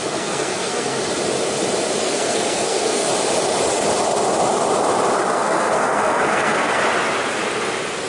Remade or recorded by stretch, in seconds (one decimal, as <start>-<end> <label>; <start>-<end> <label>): 0.0-1.0 remade; 1.0-2.0 recorded; 2.0-3.1 remade; 3.1-5.3 recorded; 5.3-6.8 remade; 6.8-8.1 recorded